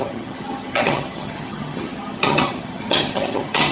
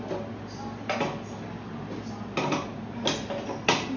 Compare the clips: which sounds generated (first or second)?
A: first